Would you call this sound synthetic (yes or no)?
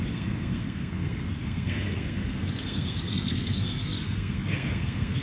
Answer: yes